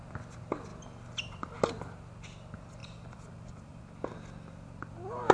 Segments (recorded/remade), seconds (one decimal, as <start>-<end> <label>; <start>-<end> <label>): 0.0-2.8 recorded; 2.8-3.8 remade; 3.8-5.3 recorded